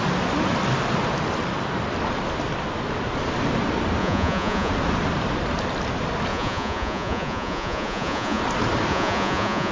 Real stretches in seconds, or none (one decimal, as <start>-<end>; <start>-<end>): 0.0-4.0; 4.7-6.3; 8.4-8.9